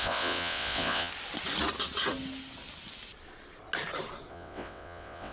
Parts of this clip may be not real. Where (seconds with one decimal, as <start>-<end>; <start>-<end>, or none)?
0.0-1.1; 4.3-5.3